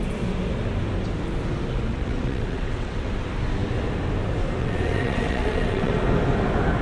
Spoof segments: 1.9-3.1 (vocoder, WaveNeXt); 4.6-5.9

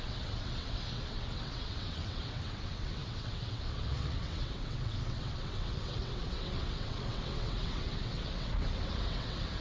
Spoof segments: 0.0-9.6 (vocoder, WaveNeXt)

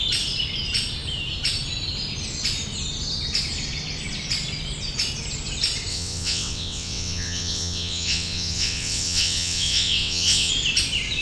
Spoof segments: 5.9-10.5 (vocoder, WaveNeXt)

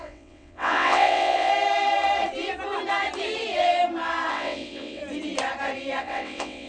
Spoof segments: 0.0-1.5 (vocoder, WaveNeXt); 4.3-5.0; 6.0-6.7

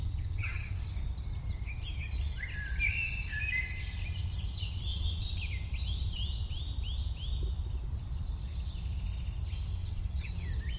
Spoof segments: 0.0-0.7 (vocoder, WaveNeXt); 4.9-5.4; 9.8-10.3

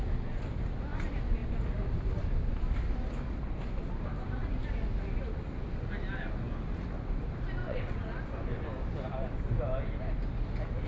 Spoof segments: 7.6-8.2 (vocoder, WaveNeXt)

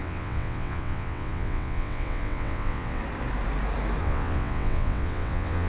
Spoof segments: 0.0-3.0 (vocoder, WaveNeXt); 4.0-5.7

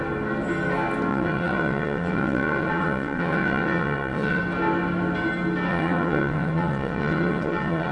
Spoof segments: 1.1-4.4 (vocoder, WaveNeXt); 5.7-7.9